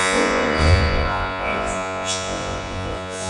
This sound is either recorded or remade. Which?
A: remade